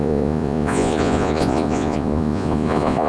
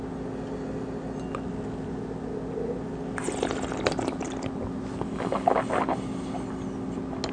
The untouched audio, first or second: second